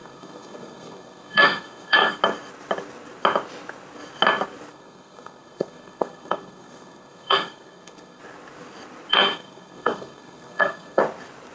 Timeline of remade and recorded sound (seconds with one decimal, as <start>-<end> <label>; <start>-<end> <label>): 0.0-2.2 remade; 2.2-4.7 recorded; 4.7-8.2 remade; 8.2-9.1 recorded; 9.1-11.0 remade; 11.0-11.5 recorded